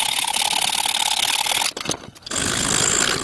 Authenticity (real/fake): real